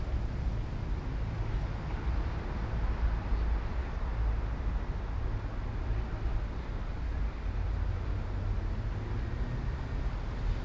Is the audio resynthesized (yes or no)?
no